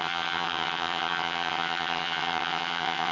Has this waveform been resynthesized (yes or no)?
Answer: yes